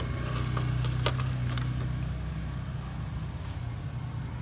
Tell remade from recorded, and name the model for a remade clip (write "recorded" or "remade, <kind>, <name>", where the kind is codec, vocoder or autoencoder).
recorded